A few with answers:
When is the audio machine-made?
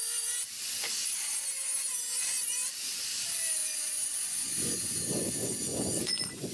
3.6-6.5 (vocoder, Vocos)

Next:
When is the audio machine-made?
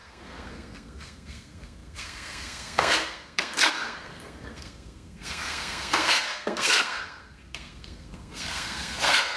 0.0-9.4 (codec, SNAC)